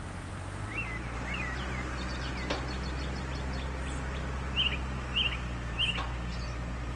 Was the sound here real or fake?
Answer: real